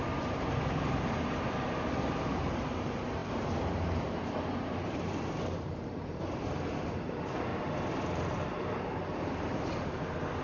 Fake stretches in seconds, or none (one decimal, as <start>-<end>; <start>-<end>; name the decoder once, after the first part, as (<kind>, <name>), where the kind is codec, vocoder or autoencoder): 0.0-7.5 (vocoder, BigVGAN v2); 8.0-10.4